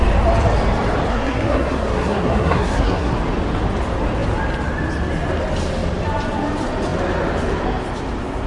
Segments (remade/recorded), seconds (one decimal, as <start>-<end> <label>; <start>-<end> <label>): 0.0-1.1 recorded; 1.1-3.1 remade; 3.1-8.5 recorded